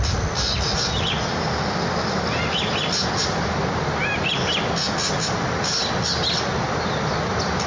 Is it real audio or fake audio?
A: real